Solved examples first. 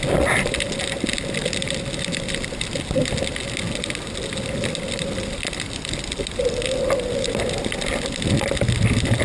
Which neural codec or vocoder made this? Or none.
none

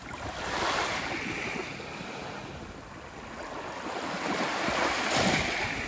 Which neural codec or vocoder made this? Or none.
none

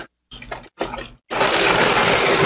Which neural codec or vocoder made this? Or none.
none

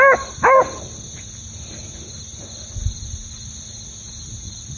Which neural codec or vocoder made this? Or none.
none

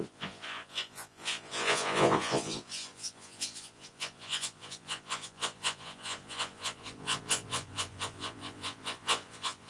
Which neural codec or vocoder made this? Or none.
vocoder, Vocos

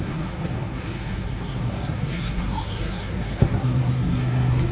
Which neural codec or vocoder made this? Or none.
codec, SNAC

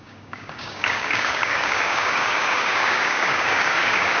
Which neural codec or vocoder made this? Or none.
codec, DAC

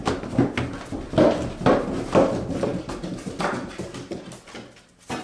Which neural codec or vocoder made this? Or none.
none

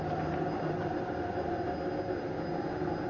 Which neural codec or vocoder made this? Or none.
none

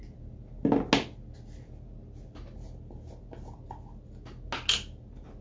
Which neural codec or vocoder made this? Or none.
none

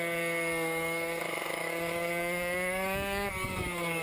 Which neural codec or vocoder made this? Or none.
codec, DAC